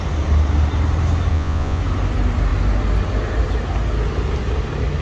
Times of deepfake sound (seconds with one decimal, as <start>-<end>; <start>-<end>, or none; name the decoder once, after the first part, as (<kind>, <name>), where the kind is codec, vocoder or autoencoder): 1.3-1.8 (vocoder, Vocos)